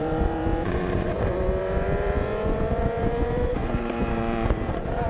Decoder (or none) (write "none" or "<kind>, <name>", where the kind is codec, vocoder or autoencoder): vocoder, Vocos